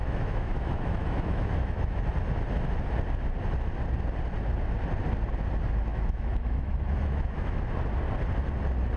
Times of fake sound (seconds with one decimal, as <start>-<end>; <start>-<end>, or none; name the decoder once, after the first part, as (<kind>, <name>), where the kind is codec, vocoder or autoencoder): 0.0-2.0 (autoencoder, DAC-VAE); 5.9-7.6